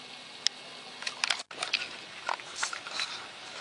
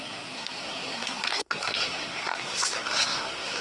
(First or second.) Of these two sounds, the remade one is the second